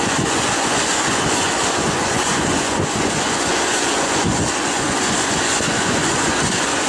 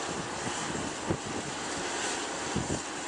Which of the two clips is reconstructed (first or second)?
first